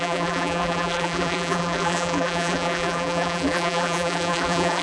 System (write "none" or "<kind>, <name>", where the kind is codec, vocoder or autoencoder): vocoder, BigVGAN v2